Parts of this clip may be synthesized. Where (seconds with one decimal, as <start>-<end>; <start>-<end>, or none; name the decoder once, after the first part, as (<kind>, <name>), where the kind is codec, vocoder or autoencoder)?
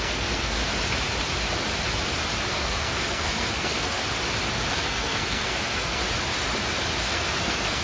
0.0-0.6 (codec, SNAC); 2.5-4.0; 4.7-6.0; 7.0-7.8